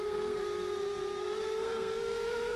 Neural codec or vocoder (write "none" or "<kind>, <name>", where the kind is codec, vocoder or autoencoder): codec, SNAC